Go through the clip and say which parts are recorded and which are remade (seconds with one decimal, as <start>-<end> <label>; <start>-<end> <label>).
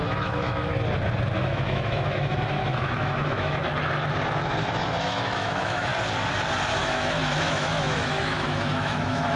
0.0-0.7 remade; 0.7-1.4 recorded; 1.4-3.6 remade; 3.6-5.0 recorded; 5.0-5.9 remade; 5.9-6.8 recorded; 6.8-9.4 remade